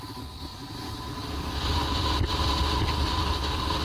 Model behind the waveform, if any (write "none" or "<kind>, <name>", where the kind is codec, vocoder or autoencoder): none